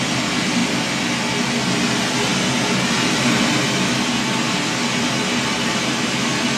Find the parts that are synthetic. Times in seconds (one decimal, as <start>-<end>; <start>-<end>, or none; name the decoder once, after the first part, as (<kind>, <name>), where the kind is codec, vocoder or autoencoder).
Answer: none